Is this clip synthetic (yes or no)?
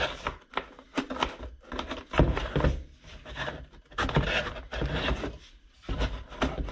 no